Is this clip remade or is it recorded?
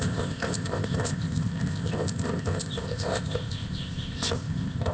remade